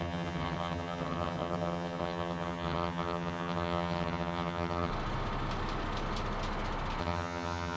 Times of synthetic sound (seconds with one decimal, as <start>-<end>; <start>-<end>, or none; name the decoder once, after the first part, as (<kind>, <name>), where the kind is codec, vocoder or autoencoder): 0.0-4.9 (vocoder, HiFi-GAN); 7.0-7.8